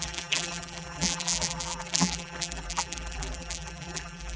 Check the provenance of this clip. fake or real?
fake